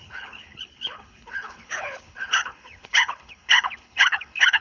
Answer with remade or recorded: remade